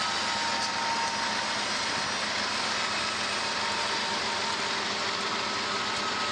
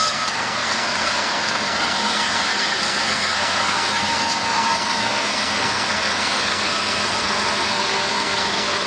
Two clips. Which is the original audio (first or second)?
first